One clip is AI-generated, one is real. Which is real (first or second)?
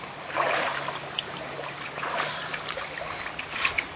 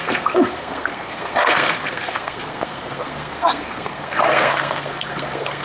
first